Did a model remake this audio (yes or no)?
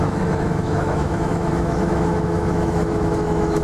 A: yes